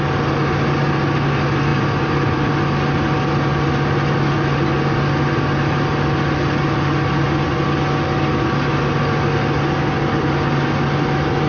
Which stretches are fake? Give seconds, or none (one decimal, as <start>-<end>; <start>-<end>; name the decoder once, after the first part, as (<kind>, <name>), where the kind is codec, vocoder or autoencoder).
1.7-2.5 (vocoder, BigVGAN v2)